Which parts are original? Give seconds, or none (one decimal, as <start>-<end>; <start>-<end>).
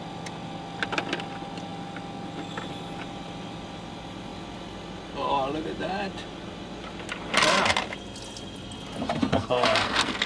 0.0-9.3